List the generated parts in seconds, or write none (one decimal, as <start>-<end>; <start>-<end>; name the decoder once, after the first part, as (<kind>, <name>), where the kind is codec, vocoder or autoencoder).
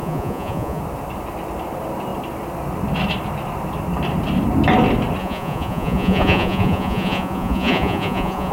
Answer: 0.0-0.8 (vocoder, Vocos); 5.2-8.5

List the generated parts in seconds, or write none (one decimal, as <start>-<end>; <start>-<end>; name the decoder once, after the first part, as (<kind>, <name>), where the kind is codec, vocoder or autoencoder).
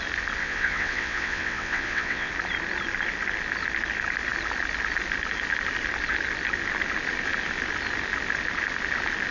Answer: 0.4-2.3 (vocoder, WaveNeXt)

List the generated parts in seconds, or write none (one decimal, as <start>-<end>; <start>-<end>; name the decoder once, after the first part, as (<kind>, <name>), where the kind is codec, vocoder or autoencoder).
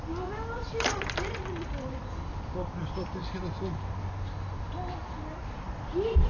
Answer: 0.0-1.4 (vocoder, BigVGAN v2); 2.8-3.2; 5.3-6.3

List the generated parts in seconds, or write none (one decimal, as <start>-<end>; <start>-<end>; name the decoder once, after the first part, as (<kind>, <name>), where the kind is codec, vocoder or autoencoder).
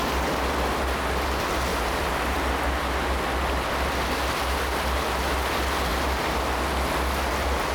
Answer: 1.7-2.5 (vocoder, BigVGAN v2); 5.9-6.4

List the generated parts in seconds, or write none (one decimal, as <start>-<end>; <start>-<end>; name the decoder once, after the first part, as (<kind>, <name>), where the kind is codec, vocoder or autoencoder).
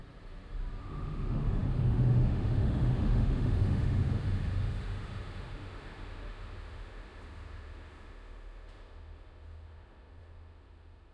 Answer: 0.8-11.1 (autoencoder, DAC-VAE)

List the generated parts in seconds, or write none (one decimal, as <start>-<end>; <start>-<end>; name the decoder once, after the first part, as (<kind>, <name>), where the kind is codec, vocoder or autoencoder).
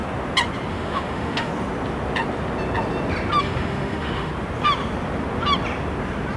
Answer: 0.7-1.5 (autoencoder, DAC-VAE); 3.4-4.3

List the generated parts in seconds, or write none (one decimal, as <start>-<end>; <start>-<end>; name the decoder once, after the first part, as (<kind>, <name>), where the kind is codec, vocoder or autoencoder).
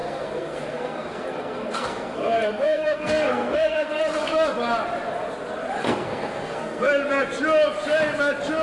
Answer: 0.0-4.0 (codec, SNAC); 5.8-6.9